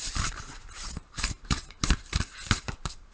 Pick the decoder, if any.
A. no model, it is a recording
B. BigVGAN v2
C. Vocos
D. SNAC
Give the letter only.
B